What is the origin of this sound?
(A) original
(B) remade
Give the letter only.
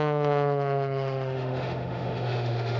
B